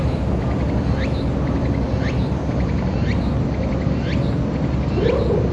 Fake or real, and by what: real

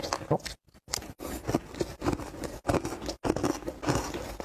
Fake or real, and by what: real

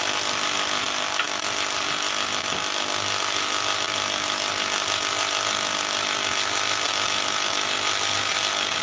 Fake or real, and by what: real